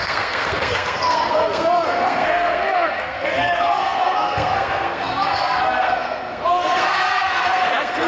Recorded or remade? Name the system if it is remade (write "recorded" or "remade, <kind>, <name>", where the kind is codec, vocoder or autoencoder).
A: remade, codec, SNAC